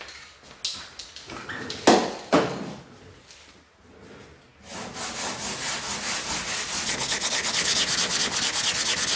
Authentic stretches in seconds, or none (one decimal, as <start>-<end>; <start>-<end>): 0.0-9.2